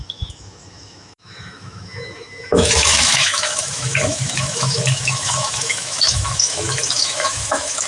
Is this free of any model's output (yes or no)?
no